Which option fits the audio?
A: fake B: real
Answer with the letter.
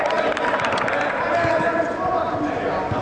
B